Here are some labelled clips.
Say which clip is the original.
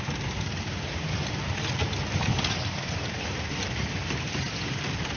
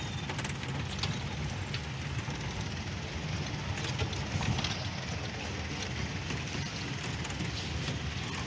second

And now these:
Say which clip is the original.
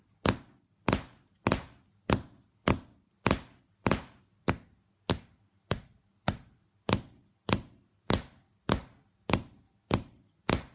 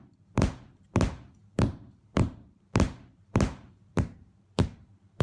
first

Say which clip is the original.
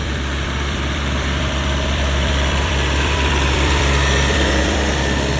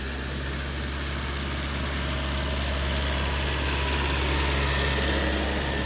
second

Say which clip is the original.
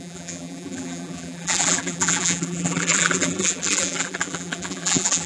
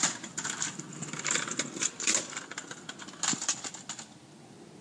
second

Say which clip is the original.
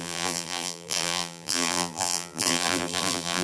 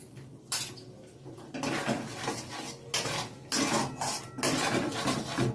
second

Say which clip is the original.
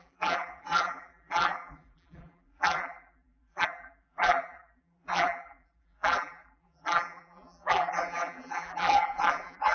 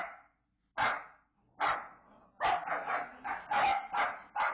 second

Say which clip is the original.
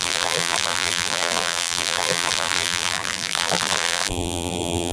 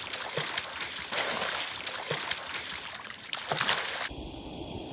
second